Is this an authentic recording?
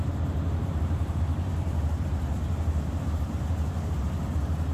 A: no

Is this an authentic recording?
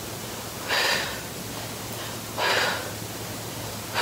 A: yes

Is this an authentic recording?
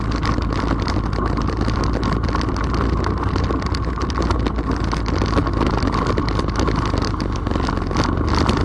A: yes